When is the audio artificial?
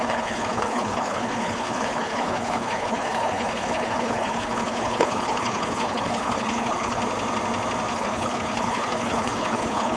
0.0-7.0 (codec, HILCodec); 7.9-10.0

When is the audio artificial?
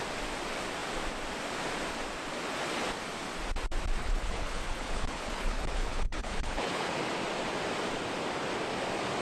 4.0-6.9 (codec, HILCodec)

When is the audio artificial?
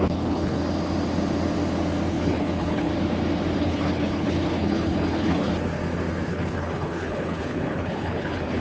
0.0-0.6 (codec, HILCodec); 2.1-2.9; 3.6-5.5; 6.3-8.6